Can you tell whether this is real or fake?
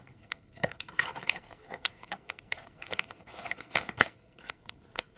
fake